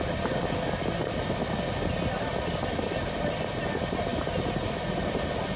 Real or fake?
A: real